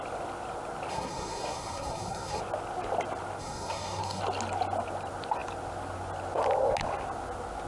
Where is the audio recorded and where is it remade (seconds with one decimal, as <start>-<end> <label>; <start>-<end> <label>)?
0.0-0.9 recorded; 0.9-2.4 remade; 2.4-3.4 recorded; 3.4-4.2 remade; 4.2-7.7 recorded